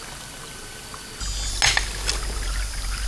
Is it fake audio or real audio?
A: real